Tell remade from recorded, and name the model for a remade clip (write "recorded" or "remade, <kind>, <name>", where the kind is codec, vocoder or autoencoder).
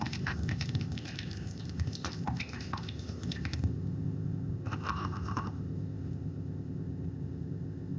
remade, codec, ZipCodec